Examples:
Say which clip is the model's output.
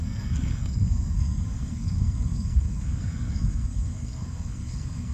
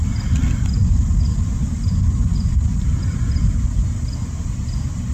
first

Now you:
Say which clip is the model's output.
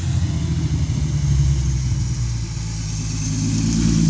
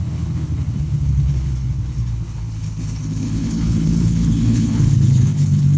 second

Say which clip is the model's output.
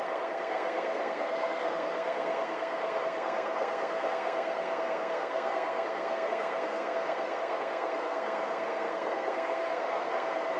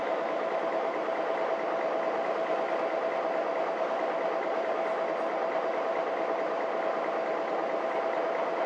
first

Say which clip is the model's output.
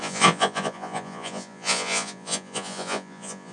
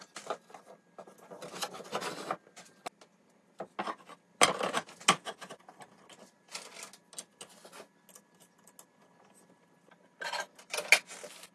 first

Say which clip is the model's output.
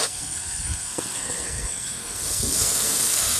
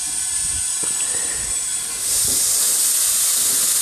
first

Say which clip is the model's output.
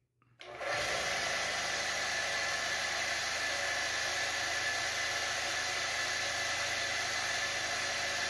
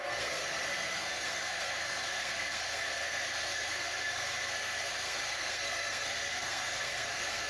second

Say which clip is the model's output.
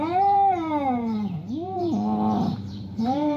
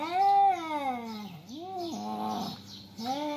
first